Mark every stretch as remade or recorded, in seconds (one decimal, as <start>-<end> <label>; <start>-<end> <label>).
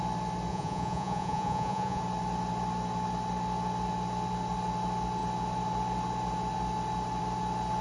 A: 0.0-0.5 recorded; 0.5-2.0 remade; 2.0-7.8 recorded